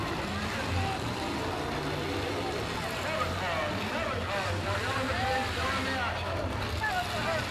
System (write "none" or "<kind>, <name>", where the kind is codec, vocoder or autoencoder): none